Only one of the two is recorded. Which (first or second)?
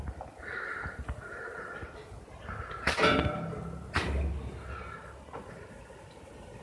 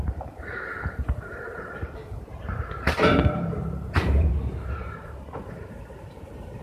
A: first